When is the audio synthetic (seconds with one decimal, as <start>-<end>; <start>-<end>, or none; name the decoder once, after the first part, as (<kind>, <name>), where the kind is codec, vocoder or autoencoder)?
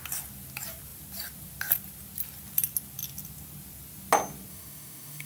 4.5-5.3 (autoencoder, DAC-VAE)